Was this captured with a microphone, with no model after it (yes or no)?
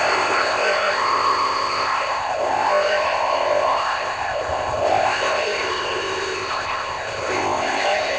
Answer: no